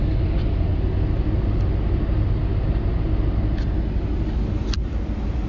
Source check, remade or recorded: recorded